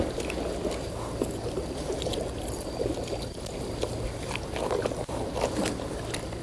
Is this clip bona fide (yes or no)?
yes